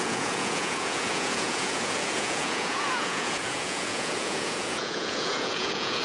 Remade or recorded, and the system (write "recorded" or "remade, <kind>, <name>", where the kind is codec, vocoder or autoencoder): remade, vocoder, Vocos